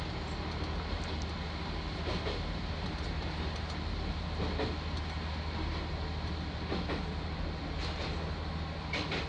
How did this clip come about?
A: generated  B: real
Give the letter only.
B